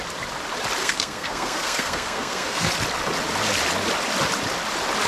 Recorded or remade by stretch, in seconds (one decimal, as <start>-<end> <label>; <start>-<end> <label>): 0.0-0.8 recorded; 0.8-2.7 remade; 2.7-5.1 recorded